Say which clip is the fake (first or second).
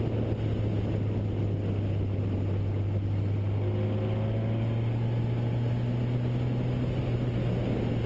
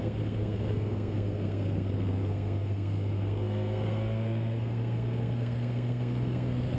second